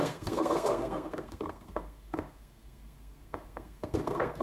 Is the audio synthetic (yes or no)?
yes